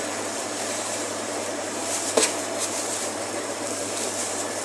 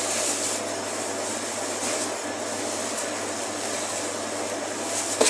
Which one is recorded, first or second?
second